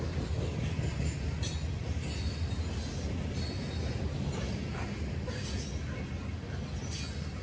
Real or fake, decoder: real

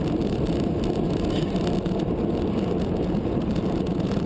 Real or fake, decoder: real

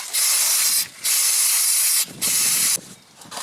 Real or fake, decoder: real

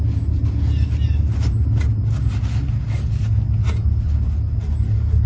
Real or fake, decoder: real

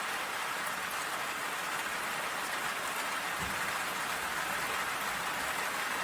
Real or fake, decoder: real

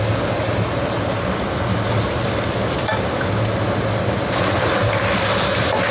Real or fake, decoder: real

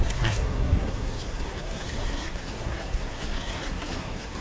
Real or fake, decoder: fake, codec, SNAC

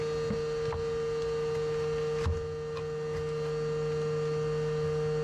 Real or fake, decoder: real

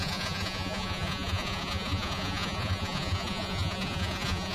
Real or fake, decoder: fake, vocoder, Vocos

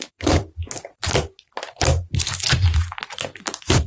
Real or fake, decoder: fake, vocoder, BigVGAN v2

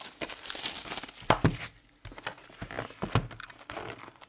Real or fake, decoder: real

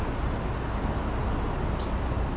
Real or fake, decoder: real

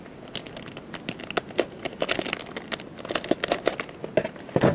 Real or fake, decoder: real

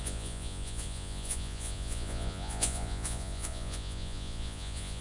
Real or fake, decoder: fake, vocoder, Vocos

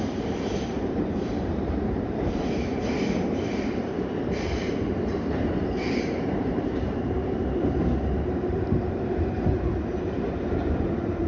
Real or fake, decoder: fake, vocoder, BigVGAN v2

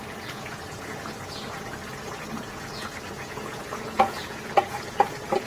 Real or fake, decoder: fake, vocoder, Vocos